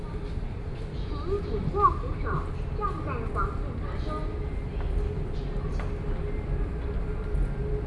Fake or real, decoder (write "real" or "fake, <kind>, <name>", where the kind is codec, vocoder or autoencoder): real